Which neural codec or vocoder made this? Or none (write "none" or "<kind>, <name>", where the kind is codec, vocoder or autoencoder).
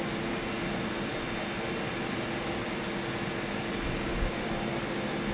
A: none